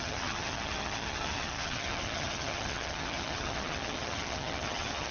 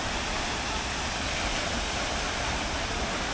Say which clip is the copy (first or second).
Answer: first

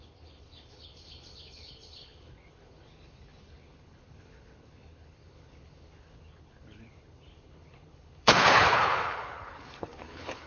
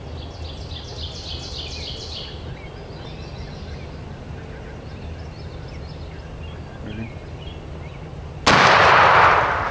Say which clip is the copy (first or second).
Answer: first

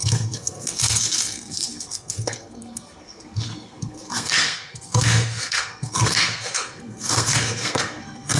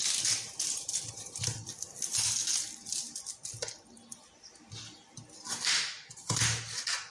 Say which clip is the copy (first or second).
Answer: first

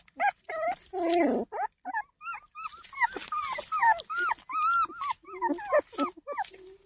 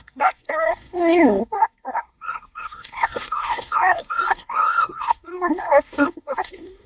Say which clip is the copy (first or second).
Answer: second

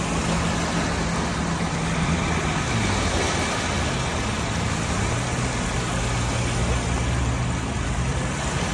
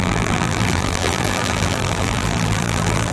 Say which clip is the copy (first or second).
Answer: second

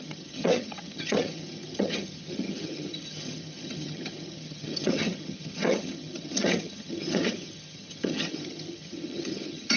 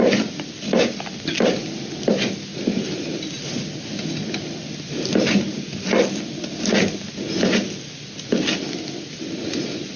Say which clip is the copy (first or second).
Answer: first